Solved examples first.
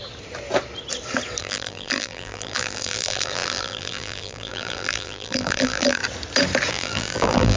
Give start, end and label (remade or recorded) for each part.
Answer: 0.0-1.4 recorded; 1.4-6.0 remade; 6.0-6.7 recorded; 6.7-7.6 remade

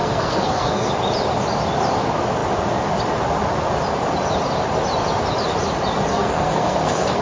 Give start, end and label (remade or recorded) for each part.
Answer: 0.0-0.9 remade; 0.9-6.1 recorded; 6.1-7.2 remade